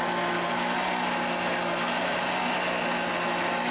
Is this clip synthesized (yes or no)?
no